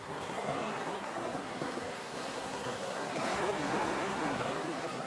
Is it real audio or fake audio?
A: fake